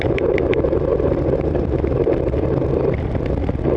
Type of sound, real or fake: fake